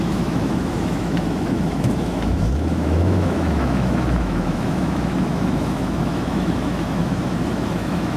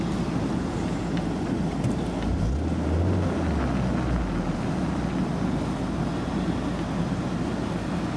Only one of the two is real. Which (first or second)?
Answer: second